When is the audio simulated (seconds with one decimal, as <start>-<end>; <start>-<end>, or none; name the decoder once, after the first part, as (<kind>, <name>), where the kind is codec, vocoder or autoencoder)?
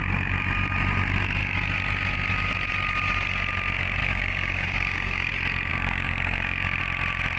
4.0-5.3 (codec, DAC); 5.7-6.8